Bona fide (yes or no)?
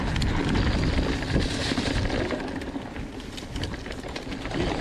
yes